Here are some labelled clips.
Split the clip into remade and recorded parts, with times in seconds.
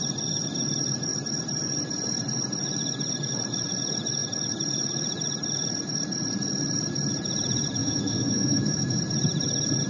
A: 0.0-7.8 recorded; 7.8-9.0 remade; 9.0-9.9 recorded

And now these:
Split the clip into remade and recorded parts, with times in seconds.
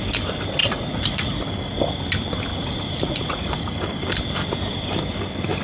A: 0.0-0.6 recorded; 0.6-1.4 remade; 1.4-2.5 recorded; 2.5-3.8 remade; 3.8-5.6 recorded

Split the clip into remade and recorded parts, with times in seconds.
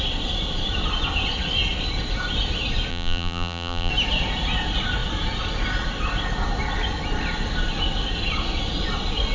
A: 0.0-2.9 recorded; 2.9-3.9 remade; 3.9-9.3 recorded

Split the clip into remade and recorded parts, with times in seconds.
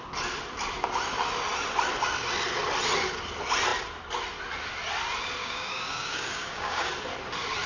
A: 0.0-5.4 recorded; 5.4-6.9 remade; 6.9-7.7 recorded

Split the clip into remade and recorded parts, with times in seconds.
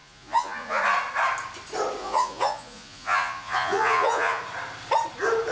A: 0.0-0.8 remade; 0.8-2.0 recorded; 2.0-4.4 remade; 4.4-5.5 recorded